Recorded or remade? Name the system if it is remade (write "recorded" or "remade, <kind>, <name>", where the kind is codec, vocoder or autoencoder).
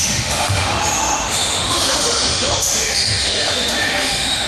remade, autoencoder, DAC-VAE